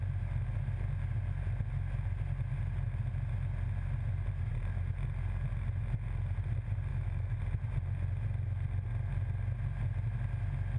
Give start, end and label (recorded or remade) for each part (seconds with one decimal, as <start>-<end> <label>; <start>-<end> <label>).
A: 0.0-6.9 recorded; 6.9-7.4 remade; 7.4-10.8 recorded